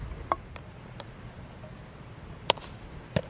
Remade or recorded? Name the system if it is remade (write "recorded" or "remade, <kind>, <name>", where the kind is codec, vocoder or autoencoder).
remade, vocoder, BigVGAN v2